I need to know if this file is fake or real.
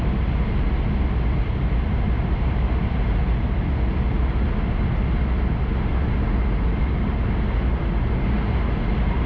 real